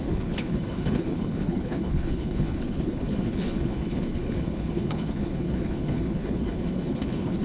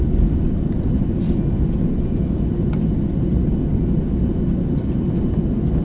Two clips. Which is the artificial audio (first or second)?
first